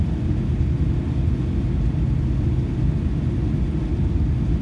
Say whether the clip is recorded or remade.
recorded